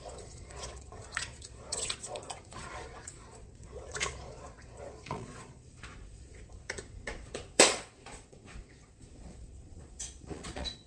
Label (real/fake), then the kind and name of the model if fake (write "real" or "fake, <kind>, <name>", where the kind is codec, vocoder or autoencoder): fake, vocoder, Vocos